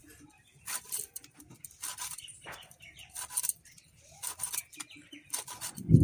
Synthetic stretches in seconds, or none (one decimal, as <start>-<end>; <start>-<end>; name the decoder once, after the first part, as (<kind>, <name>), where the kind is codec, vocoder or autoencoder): none